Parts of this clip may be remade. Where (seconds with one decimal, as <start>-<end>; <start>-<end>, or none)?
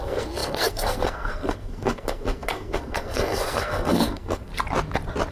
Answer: 0.0-4.5